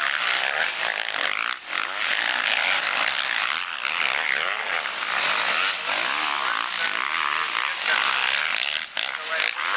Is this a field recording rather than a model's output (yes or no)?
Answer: yes